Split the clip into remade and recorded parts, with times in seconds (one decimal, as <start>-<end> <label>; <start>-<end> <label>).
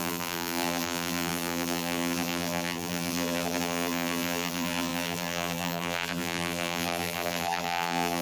0.0-8.2 remade